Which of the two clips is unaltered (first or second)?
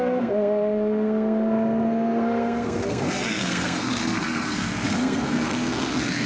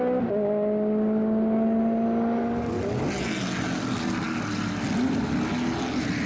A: second